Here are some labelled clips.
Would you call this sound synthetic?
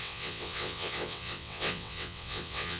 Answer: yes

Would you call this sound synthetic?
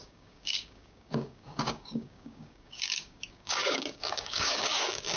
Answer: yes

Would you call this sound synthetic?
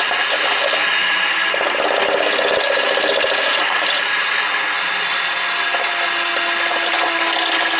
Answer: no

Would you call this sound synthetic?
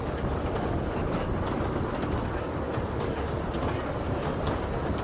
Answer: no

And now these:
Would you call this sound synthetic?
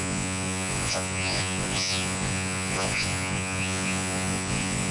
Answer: yes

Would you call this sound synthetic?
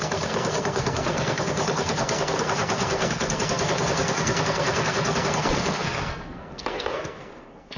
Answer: yes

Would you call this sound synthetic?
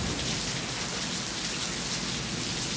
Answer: no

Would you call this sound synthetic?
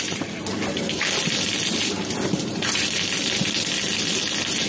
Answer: no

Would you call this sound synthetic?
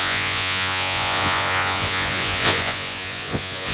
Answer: yes